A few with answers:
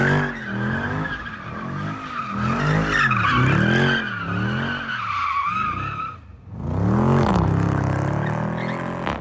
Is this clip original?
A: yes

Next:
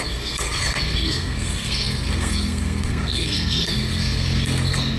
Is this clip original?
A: no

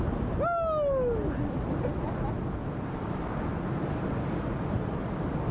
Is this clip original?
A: yes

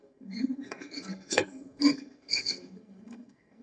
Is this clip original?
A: no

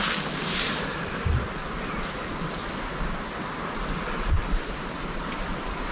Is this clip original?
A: yes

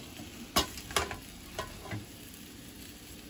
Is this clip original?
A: yes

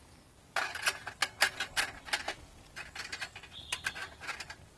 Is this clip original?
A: yes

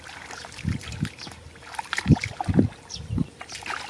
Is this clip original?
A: yes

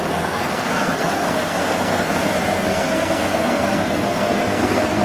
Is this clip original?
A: no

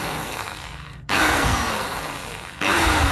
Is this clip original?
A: no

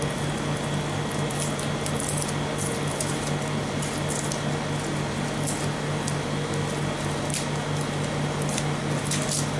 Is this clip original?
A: yes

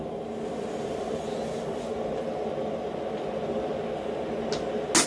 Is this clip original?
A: yes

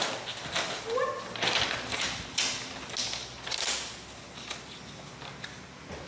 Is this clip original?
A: yes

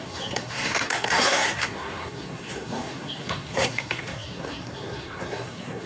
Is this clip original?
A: no